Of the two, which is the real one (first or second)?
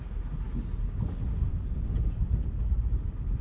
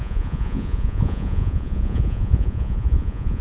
first